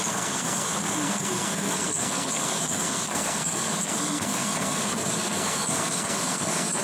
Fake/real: fake